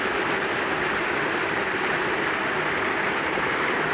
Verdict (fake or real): real